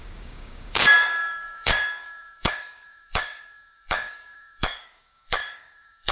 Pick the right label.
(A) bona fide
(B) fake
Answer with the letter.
B